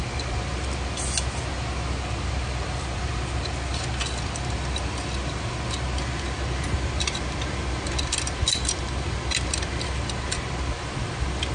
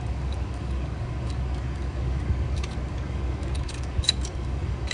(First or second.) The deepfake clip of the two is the second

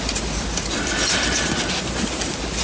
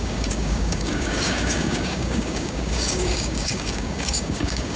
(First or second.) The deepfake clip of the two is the second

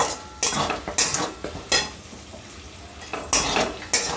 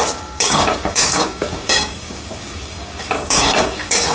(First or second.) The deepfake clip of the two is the second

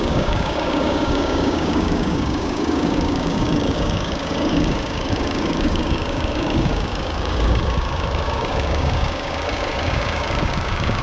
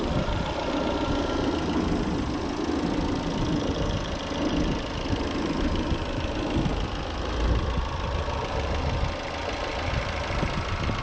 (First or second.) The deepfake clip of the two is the first